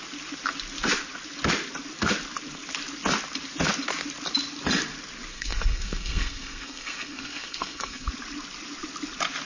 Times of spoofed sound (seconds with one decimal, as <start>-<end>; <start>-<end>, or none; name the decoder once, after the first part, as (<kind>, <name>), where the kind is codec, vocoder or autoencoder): 5.3-8.1 (codec, SNAC)